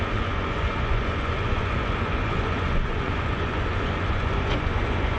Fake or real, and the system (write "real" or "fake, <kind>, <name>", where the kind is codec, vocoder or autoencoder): fake, vocoder, Vocos